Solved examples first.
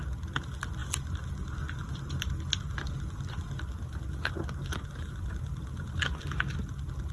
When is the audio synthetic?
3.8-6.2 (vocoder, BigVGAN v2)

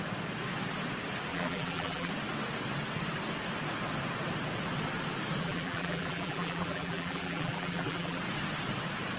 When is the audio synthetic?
1.3-2.1 (vocoder, BigVGAN v2); 5.4-8.2